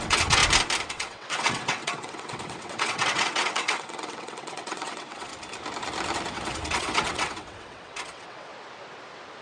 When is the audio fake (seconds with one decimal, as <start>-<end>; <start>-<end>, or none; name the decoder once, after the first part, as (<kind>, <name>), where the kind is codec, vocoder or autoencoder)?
0.0-0.4 (vocoder, WaveNeXt); 0.9-5.3; 6.3-8.5